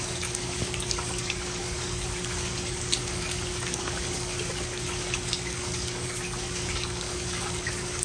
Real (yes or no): no